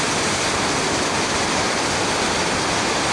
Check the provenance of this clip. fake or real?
real